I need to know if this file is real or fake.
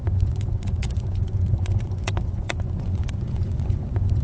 fake